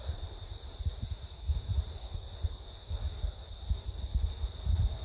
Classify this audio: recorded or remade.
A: recorded